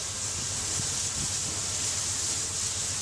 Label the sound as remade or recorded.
recorded